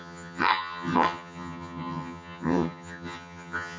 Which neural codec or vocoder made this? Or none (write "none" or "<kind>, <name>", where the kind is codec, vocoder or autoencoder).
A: vocoder, HiFi-GAN